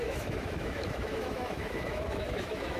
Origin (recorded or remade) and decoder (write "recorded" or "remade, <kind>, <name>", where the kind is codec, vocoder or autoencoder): remade, autoencoder, DAC-VAE